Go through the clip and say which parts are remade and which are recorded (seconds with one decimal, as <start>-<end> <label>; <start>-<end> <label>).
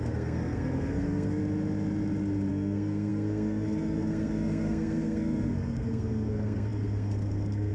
0.0-1.4 remade; 1.4-2.5 recorded; 2.5-7.7 remade